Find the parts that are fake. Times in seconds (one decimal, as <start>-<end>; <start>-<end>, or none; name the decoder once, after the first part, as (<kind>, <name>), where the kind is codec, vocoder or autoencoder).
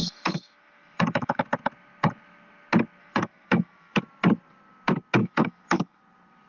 0.0-1.4 (autoencoder, DAC-VAE); 3.0-4.0; 5.2-6.0